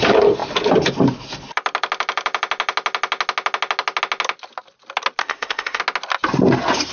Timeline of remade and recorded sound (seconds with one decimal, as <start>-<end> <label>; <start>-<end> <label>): 0.0-5.2 recorded; 5.2-5.8 remade; 5.8-6.9 recorded